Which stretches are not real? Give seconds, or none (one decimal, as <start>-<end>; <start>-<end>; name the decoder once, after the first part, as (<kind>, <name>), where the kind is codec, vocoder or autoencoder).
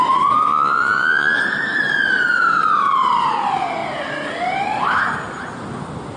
0.5-1.4 (vocoder, Vocos)